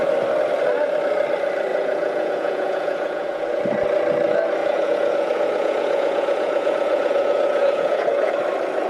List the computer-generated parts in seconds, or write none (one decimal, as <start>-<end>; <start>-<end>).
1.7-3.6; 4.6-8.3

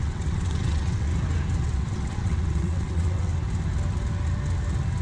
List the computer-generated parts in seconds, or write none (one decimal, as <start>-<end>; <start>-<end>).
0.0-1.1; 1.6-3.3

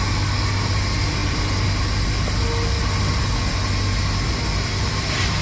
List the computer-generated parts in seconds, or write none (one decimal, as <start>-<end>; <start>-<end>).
none